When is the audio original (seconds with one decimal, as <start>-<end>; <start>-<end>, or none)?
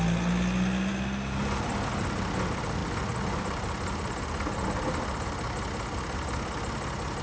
0.0-7.2